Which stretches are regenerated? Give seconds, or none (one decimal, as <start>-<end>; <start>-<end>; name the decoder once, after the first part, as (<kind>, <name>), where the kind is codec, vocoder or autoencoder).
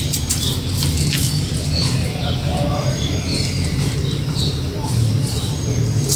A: 1.8-4.0 (vocoder, BigVGAN v2)